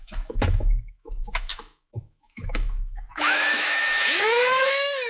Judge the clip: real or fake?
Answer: fake